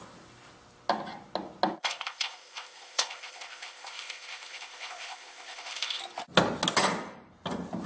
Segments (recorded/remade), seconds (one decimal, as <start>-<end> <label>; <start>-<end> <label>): 0.0-1.8 recorded; 1.8-6.0 remade; 6.0-7.9 recorded